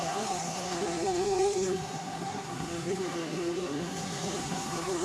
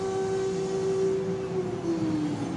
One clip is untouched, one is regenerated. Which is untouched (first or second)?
second